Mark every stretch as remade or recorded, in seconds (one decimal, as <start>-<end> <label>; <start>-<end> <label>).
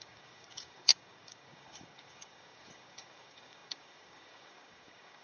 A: 0.0-5.2 remade